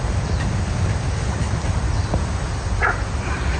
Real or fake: real